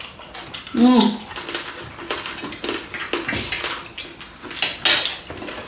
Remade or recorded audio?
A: recorded